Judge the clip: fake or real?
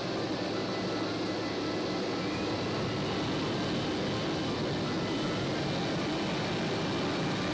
real